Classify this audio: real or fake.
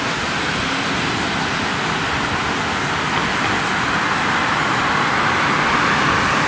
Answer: real